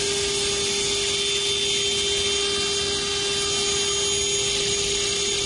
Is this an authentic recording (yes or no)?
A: yes